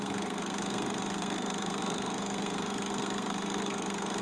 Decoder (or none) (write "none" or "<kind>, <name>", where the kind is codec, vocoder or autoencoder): codec, SNAC